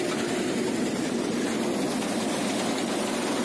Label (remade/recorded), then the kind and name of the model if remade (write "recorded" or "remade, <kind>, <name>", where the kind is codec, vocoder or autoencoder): recorded